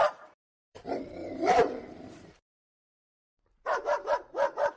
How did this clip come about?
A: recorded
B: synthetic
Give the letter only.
B